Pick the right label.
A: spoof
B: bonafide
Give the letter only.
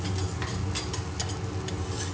B